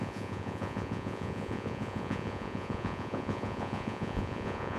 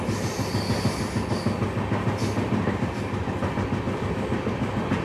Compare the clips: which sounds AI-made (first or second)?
first